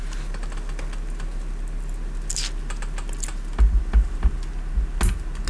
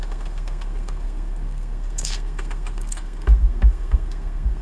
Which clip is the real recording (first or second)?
first